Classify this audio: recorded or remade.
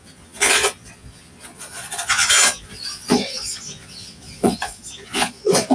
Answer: remade